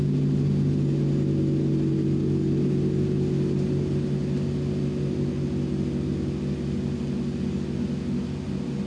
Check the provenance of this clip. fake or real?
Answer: real